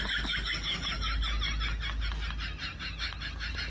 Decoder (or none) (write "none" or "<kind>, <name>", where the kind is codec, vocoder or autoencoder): none